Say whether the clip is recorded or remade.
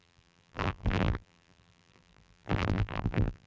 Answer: remade